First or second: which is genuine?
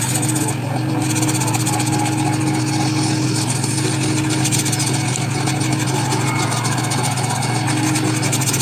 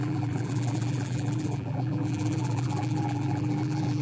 first